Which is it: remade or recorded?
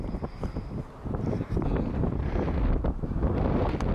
recorded